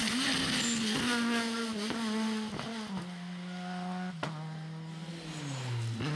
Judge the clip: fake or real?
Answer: real